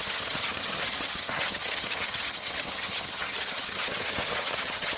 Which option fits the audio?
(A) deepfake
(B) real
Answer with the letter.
A